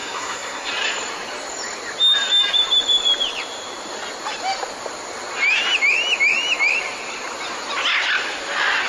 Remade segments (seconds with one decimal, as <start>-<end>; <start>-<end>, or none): 0.0-0.7